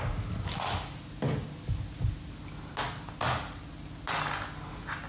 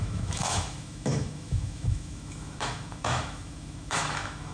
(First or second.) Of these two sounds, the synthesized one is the second